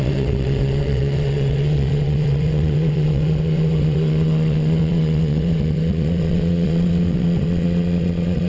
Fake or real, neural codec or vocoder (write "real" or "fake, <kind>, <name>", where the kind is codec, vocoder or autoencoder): fake, vocoder, WaveNeXt